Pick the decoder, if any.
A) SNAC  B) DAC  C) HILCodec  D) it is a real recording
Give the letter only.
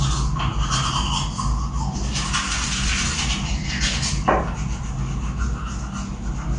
D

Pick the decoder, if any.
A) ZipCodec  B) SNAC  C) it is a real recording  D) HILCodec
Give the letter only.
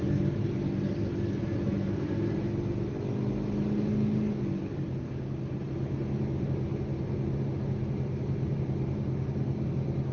C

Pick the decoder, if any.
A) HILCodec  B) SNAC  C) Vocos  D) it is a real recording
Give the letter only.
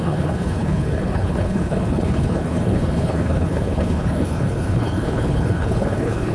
A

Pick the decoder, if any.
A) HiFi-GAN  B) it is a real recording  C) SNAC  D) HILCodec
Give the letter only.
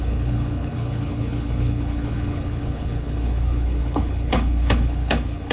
D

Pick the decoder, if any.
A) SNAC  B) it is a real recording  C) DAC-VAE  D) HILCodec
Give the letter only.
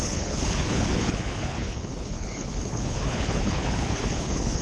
D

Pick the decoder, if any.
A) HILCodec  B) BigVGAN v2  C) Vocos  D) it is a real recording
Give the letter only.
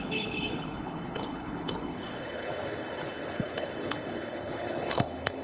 A